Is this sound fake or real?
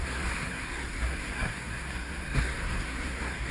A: fake